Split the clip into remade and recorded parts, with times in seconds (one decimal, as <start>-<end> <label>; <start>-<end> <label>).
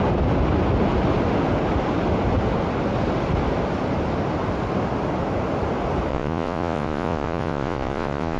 0.0-6.1 recorded; 6.1-8.4 remade